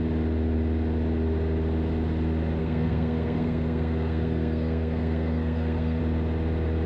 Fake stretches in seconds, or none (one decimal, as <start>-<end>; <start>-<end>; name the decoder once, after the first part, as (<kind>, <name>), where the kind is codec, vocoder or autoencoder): 2.6-6.0 (codec, SNAC)